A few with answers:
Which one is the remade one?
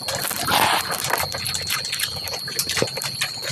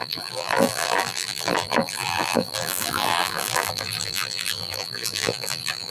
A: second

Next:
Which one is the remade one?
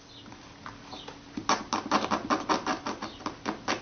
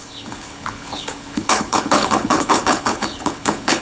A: second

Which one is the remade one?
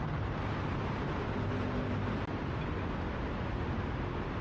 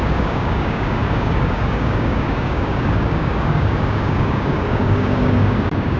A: second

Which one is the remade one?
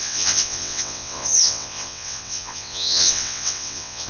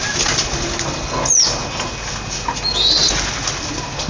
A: first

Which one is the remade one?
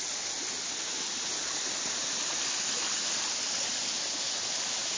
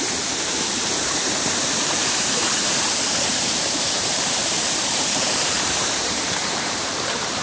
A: second